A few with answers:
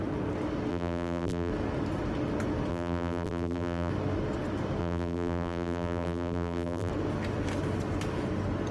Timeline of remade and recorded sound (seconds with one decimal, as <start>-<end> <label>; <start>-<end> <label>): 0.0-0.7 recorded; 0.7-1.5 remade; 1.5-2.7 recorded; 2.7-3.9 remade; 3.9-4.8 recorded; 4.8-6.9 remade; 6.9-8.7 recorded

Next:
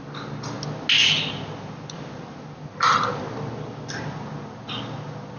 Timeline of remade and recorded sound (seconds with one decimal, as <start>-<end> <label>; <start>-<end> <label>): 0.0-5.4 recorded

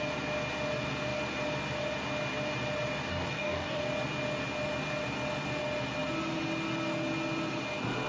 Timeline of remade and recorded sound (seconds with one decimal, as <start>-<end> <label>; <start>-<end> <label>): 0.0-3.1 recorded; 3.1-3.8 remade; 3.8-8.1 recorded

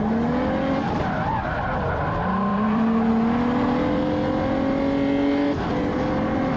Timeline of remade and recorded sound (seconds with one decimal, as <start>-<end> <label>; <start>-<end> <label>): 0.0-2.5 recorded; 2.5-3.1 remade; 3.1-6.6 recorded

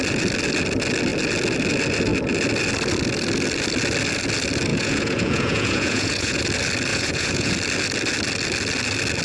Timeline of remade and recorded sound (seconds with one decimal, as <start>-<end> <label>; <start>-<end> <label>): 0.0-4.7 recorded; 4.7-6.4 remade; 6.4-6.9 recorded; 6.9-7.5 remade; 7.5-9.2 recorded